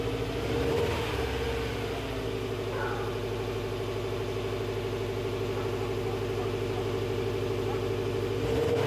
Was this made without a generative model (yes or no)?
yes